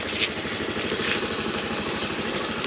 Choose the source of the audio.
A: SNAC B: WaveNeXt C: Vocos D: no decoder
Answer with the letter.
D